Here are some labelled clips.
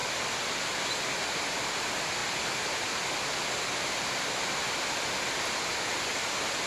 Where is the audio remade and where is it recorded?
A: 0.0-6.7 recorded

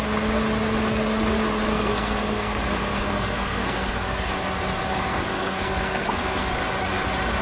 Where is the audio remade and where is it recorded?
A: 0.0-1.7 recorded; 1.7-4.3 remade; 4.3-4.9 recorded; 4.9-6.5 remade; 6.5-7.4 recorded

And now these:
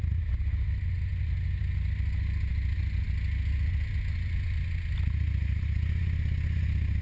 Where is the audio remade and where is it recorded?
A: 0.0-7.0 recorded